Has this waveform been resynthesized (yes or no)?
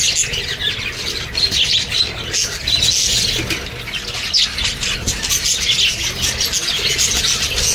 no